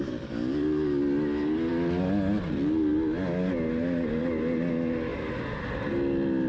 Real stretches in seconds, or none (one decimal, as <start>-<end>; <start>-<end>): 0.0-6.5